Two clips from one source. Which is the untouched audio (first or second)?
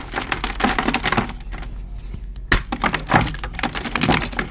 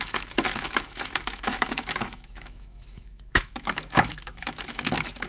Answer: first